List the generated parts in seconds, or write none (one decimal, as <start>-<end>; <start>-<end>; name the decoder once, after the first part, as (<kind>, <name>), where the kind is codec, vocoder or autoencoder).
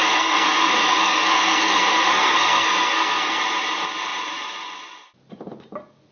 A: 0.0-3.4 (codec, SNAC)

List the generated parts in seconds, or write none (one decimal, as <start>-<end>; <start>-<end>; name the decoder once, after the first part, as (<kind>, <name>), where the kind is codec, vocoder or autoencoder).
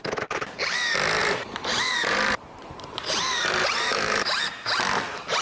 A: 1.2-4.4 (vocoder, BigVGAN v2)